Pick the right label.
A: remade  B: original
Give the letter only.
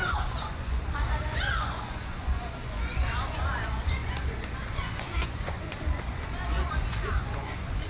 A